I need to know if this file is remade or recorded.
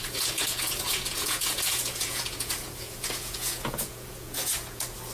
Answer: remade